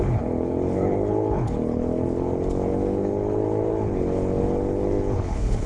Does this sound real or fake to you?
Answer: fake